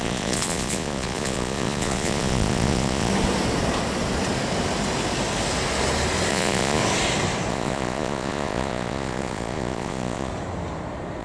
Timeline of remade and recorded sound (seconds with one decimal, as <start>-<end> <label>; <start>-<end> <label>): 0.0-3.1 remade; 3.1-6.3 recorded; 6.3-6.8 remade; 6.8-7.5 recorded; 7.5-10.3 remade; 10.3-11.2 recorded